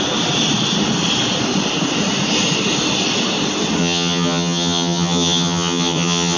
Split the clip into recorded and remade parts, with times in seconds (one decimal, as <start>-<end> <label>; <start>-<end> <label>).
0.0-3.8 recorded; 3.8-6.4 remade